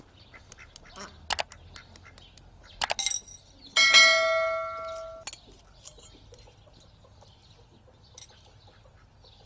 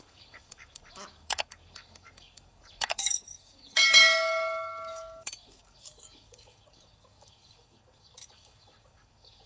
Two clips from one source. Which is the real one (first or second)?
first